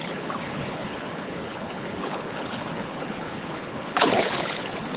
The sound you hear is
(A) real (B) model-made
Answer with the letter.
B